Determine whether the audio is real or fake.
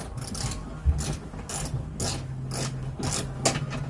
real